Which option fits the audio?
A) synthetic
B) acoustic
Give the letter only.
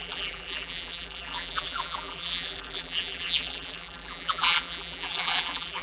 A